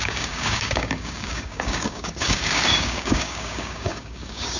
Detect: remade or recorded remade